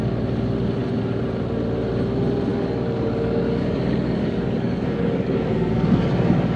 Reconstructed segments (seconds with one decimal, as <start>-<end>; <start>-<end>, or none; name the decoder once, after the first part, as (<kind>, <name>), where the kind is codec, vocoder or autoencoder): 2.5-6.6 (codec, DAC)